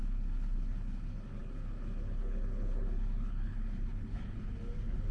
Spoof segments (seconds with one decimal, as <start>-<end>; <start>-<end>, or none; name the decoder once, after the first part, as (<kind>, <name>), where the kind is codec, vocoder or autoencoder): 0.0-5.1 (codec, HILCodec)

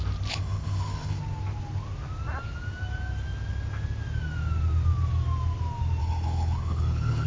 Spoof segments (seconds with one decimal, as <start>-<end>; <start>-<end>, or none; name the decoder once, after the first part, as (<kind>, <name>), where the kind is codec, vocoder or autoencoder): 0.4-1.2 (codec, HILCodec); 6.0-7.3

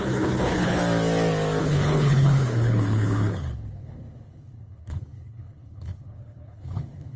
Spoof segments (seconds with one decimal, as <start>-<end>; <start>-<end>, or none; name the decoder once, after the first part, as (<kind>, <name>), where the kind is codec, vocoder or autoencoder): 0.0-0.8 (codec, HILCodec); 1.6-7.2

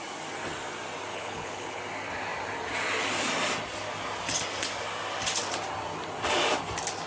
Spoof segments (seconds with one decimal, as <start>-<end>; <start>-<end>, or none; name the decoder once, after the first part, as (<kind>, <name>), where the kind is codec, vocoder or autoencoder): 1.1-1.8 (codec, HILCodec)

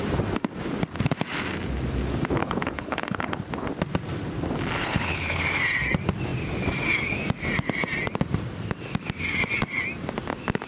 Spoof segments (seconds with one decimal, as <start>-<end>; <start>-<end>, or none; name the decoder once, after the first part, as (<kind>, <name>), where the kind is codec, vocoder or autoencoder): 2.4-3.4 (codec, HILCodec); 4.8-5.4